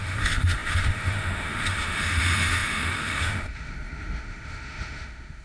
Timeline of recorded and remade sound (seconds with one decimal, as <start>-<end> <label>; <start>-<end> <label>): 0.0-5.4 remade